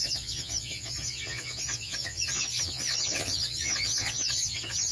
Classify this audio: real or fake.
fake